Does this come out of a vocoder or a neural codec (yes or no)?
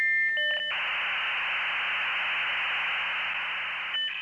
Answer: no